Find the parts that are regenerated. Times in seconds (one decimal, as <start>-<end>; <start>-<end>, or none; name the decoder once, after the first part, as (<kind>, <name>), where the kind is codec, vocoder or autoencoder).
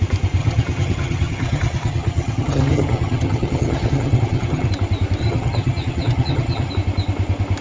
0.4-4.7 (vocoder, HiFi-GAN); 5.2-6.7